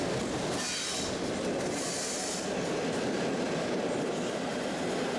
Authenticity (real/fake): real